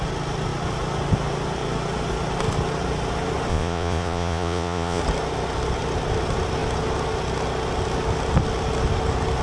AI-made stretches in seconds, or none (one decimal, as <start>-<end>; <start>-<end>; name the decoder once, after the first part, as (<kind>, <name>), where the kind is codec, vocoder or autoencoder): 3.5-5.0 (vocoder, Vocos)